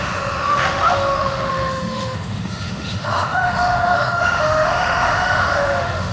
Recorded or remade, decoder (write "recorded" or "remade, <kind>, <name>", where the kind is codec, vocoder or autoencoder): remade, autoencoder, DAC-VAE